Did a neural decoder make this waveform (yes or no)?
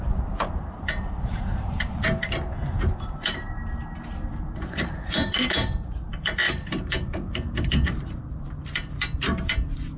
yes